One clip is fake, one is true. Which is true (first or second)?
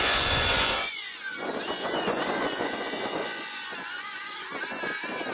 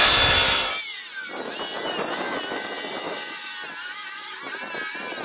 second